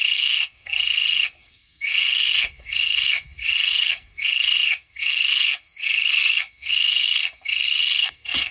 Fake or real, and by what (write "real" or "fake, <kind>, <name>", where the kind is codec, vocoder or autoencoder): fake, codec, SNAC